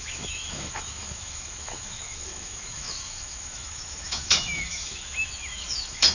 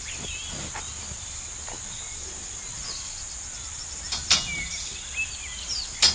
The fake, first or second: first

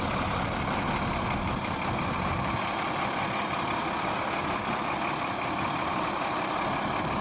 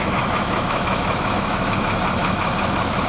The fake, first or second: second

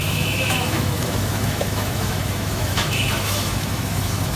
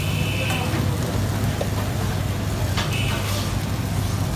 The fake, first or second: first